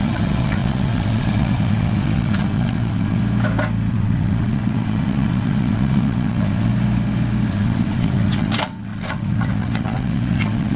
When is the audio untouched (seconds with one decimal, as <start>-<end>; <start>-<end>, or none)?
3.2-3.9; 6.7-7.5